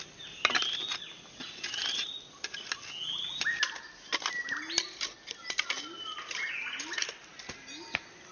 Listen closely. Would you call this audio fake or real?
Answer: real